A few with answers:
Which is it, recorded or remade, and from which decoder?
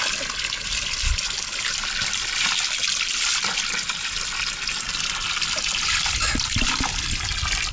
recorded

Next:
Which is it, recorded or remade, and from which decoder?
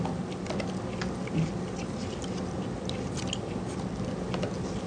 recorded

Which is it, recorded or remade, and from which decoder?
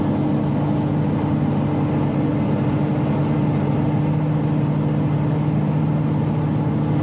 recorded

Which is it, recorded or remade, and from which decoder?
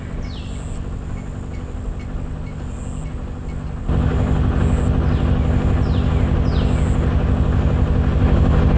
recorded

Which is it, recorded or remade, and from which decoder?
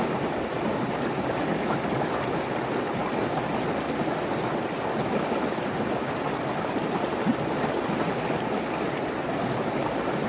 recorded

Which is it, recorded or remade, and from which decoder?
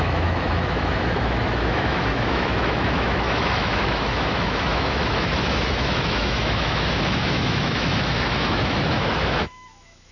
remade, autoencoder, DAC-VAE